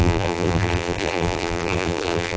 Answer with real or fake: fake